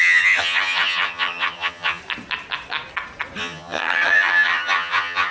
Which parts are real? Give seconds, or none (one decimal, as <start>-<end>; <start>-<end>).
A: 2.0-3.4